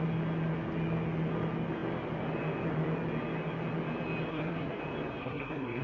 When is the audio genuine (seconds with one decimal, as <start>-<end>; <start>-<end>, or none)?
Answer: 0.0-4.3; 4.8-5.2

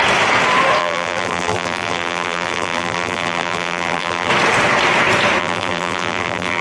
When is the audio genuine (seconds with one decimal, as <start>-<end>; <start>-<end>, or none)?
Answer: 0.0-0.8; 4.3-5.4

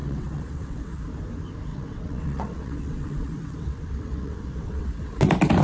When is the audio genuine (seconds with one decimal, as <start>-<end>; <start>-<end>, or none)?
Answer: 1.0-1.7; 4.9-5.6

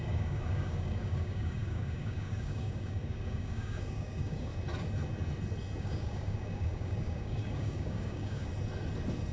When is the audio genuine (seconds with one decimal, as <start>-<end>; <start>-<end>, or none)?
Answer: 4.5-5.8; 8.5-9.3

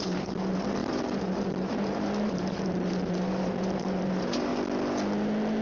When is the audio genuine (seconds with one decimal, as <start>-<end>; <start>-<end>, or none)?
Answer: 4.5-5.6

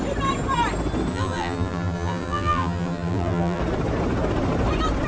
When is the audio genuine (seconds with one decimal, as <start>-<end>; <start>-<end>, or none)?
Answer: 0.0-1.1; 3.6-5.1